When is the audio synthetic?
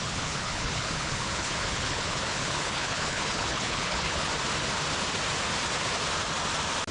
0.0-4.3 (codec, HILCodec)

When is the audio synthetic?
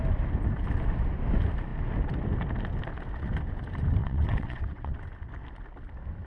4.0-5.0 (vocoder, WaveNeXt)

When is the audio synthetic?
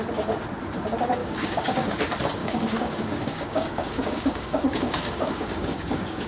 1.2-2.0 (codec, DAC); 2.4-6.3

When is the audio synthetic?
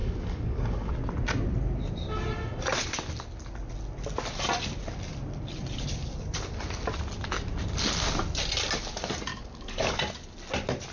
0.0-0.9 (codec, DAC); 9.3-10.0